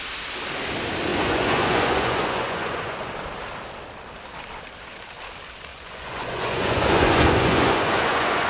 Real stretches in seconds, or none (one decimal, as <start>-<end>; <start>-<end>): 0.0-1.1; 3.1-5.7